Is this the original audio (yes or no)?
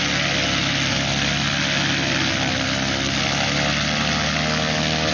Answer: yes